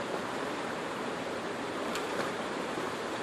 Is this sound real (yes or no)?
no